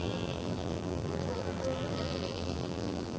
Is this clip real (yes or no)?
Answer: no